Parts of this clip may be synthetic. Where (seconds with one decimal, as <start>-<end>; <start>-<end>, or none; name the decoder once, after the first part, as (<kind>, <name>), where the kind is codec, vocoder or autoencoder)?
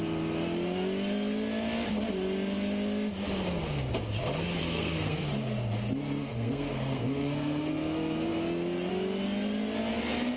4.6-5.2 (codec, SNAC); 6.2-7.7